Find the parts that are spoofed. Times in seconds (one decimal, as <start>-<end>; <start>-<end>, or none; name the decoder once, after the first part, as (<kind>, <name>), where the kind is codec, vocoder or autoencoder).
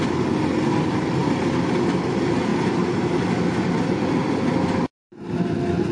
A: none